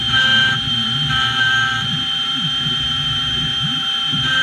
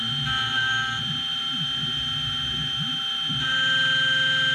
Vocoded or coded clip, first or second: first